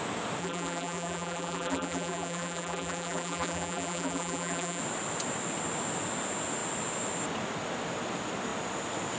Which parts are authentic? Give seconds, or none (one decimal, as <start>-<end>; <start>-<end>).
0.0-0.4; 4.8-9.2